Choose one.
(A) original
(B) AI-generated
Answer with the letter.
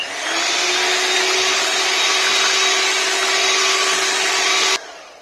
A